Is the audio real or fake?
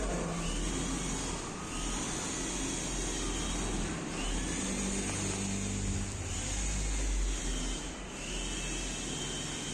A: real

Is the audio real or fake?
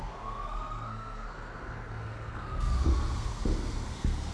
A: fake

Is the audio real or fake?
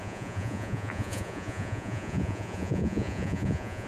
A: fake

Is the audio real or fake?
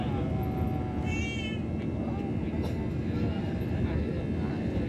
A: real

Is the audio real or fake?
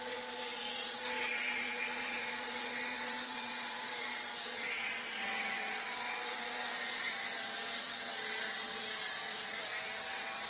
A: fake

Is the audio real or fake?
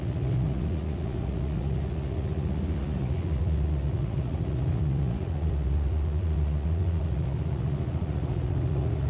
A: fake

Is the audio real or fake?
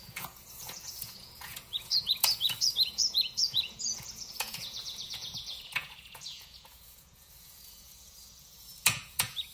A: fake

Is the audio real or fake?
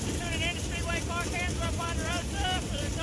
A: fake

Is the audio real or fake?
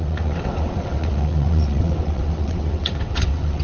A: fake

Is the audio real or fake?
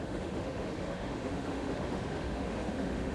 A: fake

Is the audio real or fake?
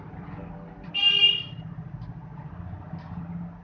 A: real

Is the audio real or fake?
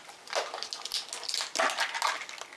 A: real